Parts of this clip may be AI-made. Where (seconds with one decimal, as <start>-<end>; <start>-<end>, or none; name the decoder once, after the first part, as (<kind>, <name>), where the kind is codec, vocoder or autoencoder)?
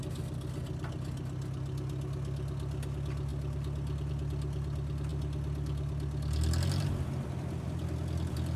none